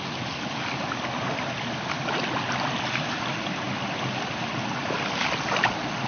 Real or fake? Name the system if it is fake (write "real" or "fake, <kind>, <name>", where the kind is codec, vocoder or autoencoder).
real